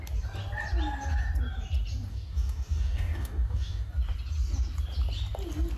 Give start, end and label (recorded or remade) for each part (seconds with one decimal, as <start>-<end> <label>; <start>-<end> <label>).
0.0-2.1 recorded; 2.1-3.9 remade; 3.9-5.8 recorded